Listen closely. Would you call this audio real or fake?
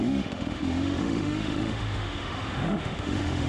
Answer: fake